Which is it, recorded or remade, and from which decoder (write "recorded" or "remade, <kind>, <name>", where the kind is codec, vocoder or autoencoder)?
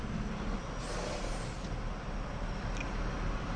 recorded